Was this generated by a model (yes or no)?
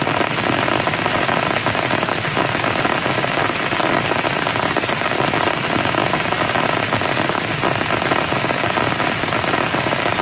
no